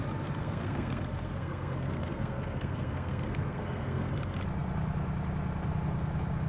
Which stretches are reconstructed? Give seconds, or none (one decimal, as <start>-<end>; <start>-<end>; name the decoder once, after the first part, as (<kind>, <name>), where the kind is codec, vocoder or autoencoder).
0.4-4.1 (codec, SNAC)